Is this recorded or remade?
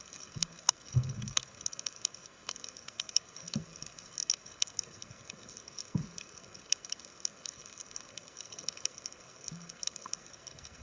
remade